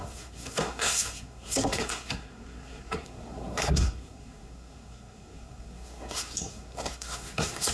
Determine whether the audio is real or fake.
fake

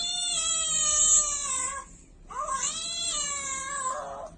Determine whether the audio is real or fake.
real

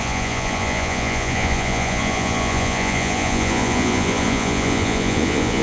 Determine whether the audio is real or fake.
fake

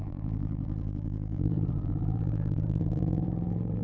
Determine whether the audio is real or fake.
fake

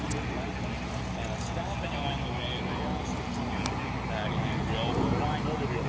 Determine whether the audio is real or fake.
real